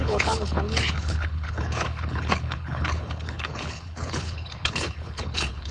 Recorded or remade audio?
remade